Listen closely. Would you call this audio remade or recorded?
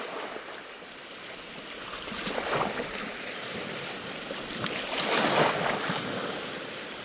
recorded